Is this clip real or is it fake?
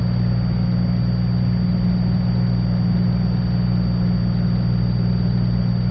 real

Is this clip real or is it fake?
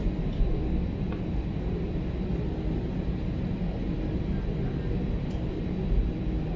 real